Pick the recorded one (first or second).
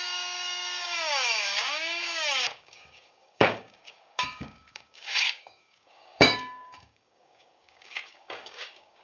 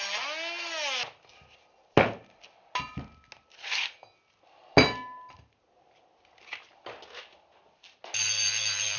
second